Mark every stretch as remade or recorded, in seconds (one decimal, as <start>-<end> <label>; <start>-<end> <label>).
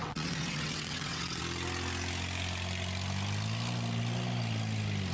0.0-1.4 remade; 1.4-5.1 recorded